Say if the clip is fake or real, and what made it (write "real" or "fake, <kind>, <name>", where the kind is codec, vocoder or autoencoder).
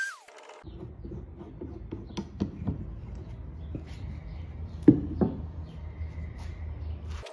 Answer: real